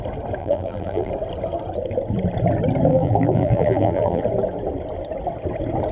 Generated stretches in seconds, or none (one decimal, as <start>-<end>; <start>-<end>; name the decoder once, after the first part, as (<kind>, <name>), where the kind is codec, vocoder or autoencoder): 0.4-1.1 (vocoder, BigVGAN v2); 2.9-4.2